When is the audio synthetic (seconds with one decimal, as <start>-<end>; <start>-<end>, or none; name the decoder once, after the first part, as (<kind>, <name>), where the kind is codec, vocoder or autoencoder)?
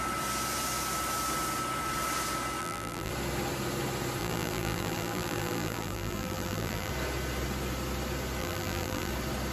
2.6-3.1 (vocoder, BigVGAN v2); 4.2-6.9; 8.4-9.1